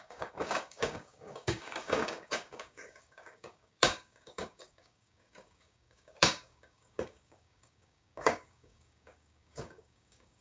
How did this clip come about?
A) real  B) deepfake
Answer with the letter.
B